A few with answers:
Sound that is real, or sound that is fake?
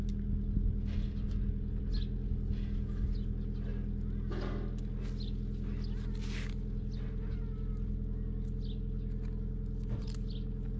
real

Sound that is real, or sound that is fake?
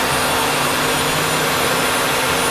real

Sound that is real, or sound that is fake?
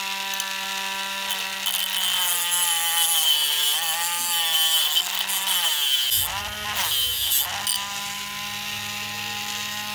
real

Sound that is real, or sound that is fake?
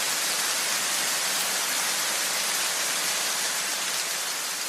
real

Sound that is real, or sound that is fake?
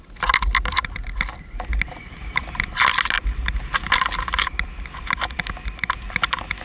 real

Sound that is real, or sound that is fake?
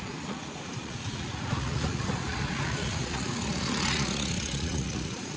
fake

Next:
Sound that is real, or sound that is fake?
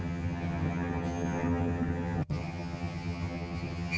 fake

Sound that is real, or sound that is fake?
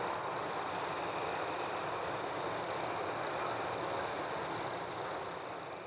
real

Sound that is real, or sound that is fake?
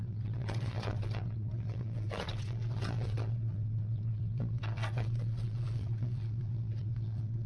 fake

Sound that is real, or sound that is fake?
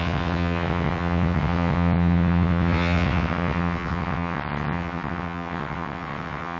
fake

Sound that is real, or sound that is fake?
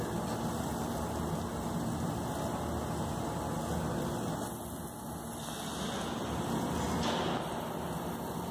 real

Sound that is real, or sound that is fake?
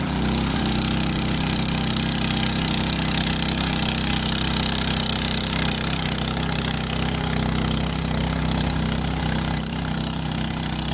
fake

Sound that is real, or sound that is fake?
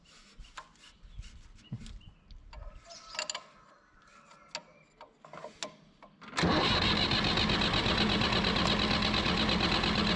real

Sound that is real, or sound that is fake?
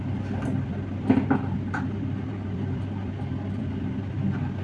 fake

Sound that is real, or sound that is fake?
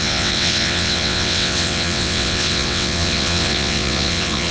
fake